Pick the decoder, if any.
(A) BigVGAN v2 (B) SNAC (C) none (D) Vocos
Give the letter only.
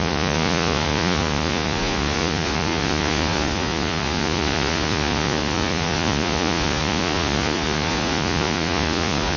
D